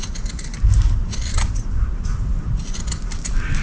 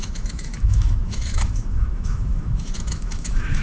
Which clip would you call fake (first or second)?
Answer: second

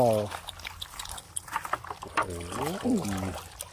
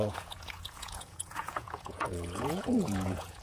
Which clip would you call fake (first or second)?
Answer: second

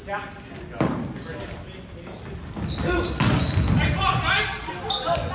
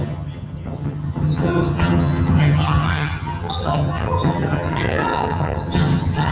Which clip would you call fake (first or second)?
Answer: second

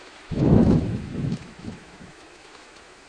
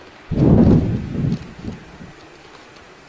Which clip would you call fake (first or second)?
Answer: first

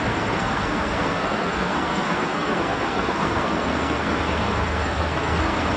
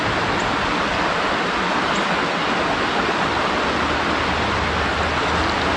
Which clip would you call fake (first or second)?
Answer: first